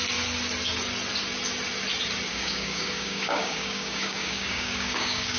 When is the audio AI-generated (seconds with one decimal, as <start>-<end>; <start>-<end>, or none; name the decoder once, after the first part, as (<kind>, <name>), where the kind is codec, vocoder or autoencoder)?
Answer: 2.3-5.4 (codec, DAC)